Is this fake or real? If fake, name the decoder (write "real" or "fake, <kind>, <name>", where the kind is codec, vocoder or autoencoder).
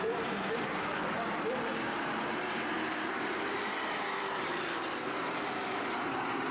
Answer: fake, vocoder, BigVGAN v2